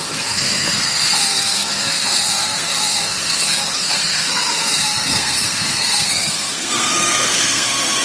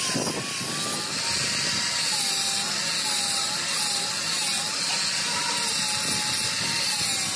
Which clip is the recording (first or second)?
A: second